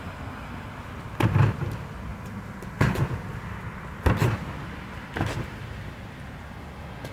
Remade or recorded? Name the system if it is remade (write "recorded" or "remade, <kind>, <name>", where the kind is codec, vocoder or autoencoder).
recorded